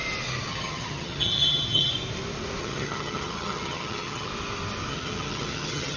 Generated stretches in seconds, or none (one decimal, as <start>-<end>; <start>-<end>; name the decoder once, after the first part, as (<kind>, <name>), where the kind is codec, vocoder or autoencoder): 0.5-1.9 (vocoder, HiFi-GAN); 2.6-4.3; 4.9-6.0